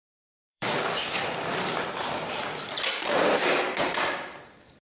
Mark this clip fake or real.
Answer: fake